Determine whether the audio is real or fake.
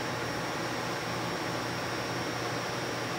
real